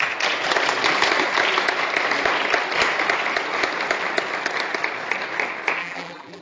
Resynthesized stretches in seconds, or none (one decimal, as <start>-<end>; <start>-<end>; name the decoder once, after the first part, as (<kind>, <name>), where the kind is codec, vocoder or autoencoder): 5.8-6.4 (vocoder, BigVGAN v2)